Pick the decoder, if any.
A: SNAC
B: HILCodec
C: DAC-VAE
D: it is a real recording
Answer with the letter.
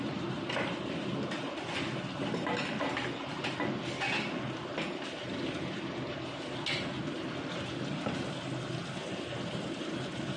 D